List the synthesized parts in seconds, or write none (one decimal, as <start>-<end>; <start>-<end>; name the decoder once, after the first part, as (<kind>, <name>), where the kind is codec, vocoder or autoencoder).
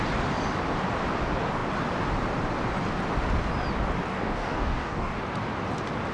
4.1-5.2 (codec, DAC)